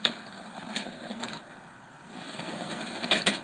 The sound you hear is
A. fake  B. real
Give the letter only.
A